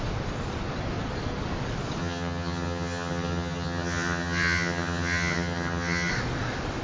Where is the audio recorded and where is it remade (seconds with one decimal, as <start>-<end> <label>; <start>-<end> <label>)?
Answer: 0.0-2.0 recorded; 2.0-6.1 remade; 6.1-6.8 recorded